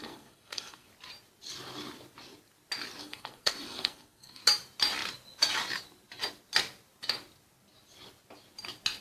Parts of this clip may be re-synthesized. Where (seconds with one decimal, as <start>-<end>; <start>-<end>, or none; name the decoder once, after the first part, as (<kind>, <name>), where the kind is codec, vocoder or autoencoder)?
0.0-0.9 (codec, SNAC); 3.0-4.4